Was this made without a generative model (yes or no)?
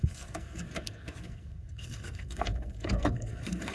no